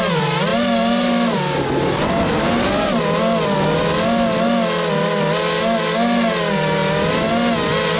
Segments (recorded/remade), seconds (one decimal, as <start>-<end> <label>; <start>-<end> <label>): 0.0-8.0 recorded